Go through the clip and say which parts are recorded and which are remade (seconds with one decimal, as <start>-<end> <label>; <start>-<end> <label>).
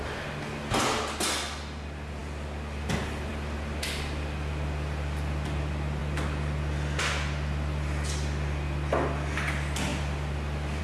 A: 0.0-10.8 recorded